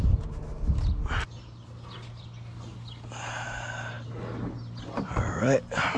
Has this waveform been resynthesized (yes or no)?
no